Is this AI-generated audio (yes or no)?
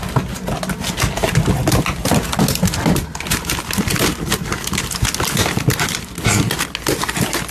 no